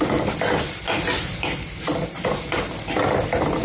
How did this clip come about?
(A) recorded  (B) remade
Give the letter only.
A